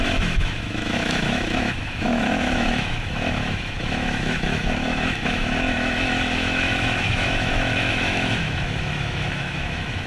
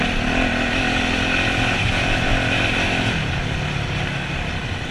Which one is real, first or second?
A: second